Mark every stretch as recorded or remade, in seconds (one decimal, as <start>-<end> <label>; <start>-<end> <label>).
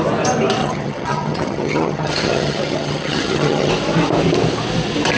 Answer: 0.0-0.6 recorded; 0.6-3.7 remade; 3.7-5.2 recorded